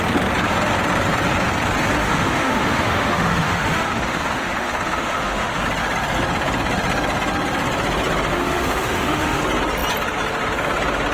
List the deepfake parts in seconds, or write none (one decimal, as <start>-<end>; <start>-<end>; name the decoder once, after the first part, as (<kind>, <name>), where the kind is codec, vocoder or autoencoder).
2.0-5.6 (autoencoder, DAC-VAE); 8.3-9.4